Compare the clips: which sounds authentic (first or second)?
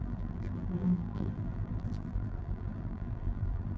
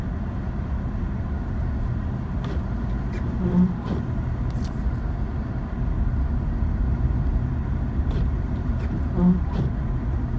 second